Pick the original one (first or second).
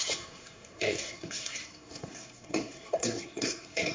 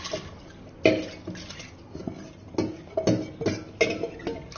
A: second